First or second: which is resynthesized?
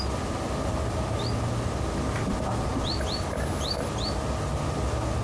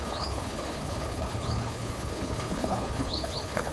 second